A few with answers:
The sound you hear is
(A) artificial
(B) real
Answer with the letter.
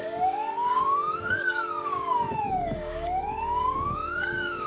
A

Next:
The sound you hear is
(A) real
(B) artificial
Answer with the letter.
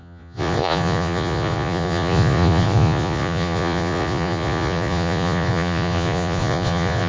B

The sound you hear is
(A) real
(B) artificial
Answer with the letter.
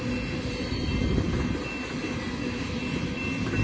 A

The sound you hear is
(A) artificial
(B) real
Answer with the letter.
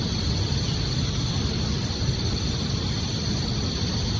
B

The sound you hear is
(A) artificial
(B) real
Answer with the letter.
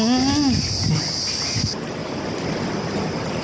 B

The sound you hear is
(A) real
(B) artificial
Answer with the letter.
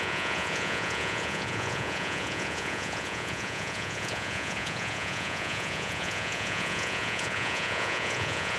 B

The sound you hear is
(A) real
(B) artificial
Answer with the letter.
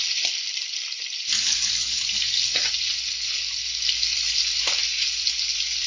A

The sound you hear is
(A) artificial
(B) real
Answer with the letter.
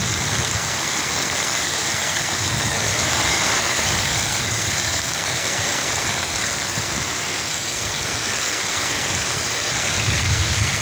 A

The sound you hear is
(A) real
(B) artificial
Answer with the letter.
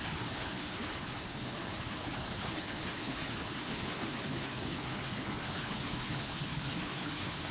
B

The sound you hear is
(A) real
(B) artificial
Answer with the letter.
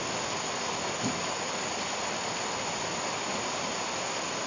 A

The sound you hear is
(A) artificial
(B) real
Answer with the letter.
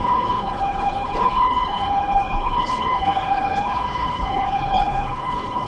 A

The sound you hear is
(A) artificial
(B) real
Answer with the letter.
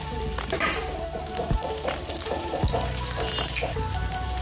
A